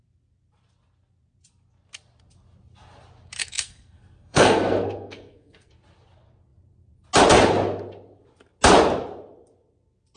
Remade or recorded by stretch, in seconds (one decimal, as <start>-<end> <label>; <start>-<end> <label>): 0.0-3.4 recorded; 3.4-5.7 remade; 5.7-10.2 recorded